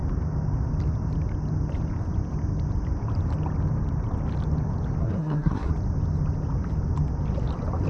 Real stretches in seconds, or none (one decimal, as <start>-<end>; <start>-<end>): 0.0-5.0; 5.7-7.9

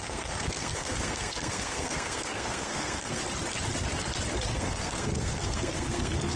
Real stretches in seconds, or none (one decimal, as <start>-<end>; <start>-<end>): 3.2-4.5